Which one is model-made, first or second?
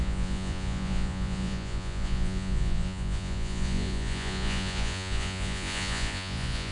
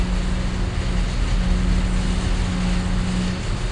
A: first